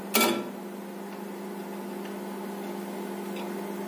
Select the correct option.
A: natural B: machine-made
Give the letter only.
A